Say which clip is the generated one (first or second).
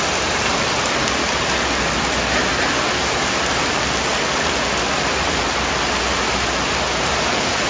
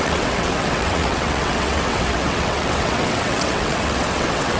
second